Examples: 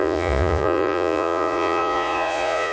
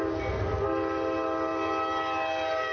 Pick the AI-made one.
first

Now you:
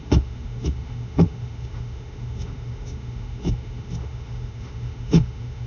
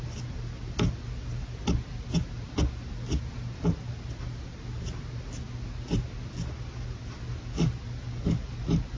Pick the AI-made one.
first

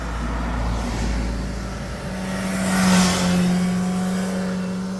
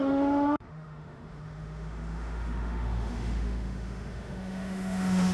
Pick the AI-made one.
second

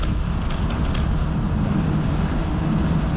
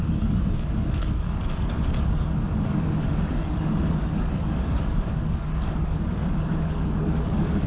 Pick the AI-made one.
second